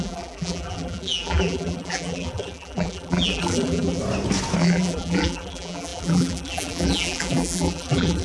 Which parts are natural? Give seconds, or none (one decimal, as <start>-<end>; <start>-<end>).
4.0-4.6